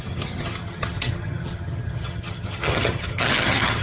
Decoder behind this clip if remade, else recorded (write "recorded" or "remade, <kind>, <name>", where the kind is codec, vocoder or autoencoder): remade, vocoder, HiFi-GAN